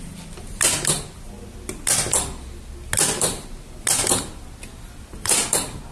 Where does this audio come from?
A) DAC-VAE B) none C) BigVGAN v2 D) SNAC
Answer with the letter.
B